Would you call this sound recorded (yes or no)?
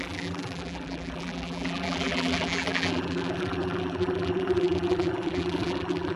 no